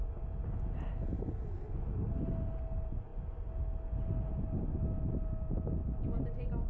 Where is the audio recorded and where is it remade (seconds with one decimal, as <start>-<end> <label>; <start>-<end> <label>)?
0.0-6.7 recorded